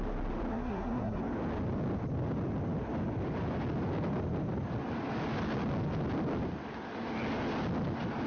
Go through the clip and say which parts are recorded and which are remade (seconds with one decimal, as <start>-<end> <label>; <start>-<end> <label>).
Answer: 0.0-0.5 recorded; 0.5-1.2 remade; 1.2-8.3 recorded